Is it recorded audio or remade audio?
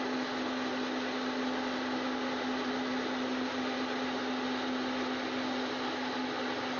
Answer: recorded